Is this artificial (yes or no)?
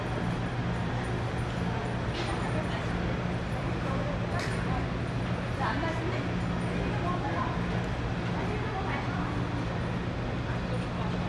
no